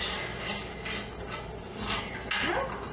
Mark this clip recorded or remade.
recorded